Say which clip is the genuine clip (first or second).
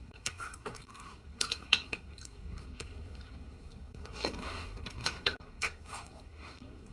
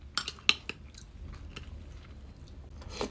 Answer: second